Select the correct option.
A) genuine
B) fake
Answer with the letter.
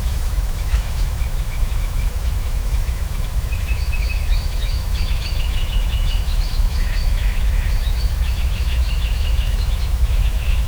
B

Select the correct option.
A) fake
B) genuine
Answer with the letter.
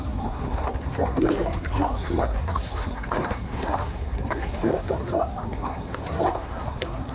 A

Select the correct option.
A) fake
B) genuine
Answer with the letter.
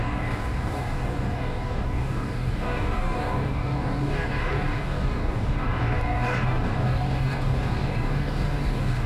A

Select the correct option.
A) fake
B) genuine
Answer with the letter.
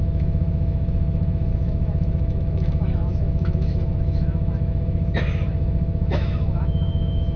A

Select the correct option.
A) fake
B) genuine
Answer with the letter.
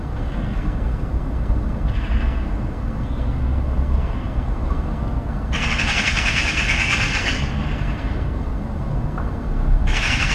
A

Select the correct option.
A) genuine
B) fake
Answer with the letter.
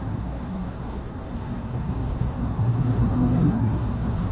B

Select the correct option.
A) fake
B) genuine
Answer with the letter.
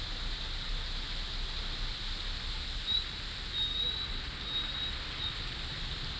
B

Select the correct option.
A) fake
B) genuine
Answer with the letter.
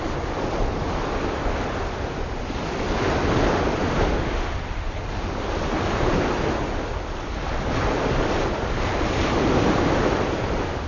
B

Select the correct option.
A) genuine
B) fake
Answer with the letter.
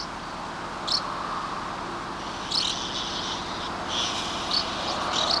A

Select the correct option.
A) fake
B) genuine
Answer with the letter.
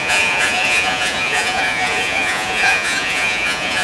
A